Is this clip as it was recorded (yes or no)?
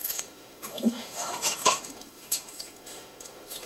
no